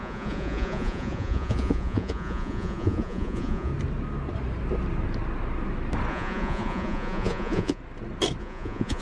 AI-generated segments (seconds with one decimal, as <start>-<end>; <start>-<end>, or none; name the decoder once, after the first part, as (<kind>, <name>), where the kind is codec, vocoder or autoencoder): 0.0-3.7 (vocoder, Vocos); 6.1-7.8; 8.4-9.0